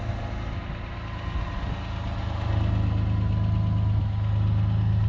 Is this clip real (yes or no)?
yes